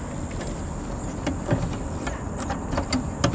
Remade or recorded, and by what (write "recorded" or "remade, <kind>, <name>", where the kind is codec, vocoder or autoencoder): recorded